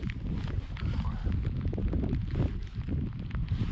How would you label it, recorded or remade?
recorded